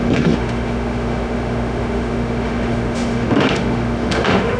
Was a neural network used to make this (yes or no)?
yes